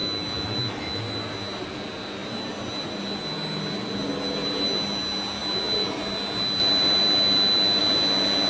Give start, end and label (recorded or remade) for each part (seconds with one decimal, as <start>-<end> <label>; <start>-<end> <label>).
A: 0.0-1.0 remade; 1.0-8.5 recorded